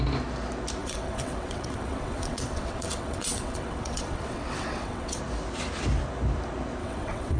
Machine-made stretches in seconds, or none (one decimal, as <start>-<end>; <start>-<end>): 0.8-5.2; 6.8-7.4